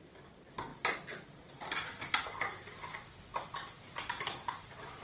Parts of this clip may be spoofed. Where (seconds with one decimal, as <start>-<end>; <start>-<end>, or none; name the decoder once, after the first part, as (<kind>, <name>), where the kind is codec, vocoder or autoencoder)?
none